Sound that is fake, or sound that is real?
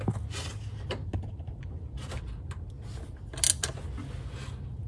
real